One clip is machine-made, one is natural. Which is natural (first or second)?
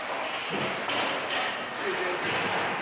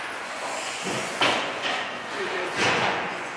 first